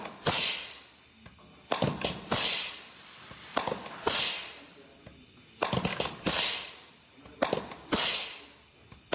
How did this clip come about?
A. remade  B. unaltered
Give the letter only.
B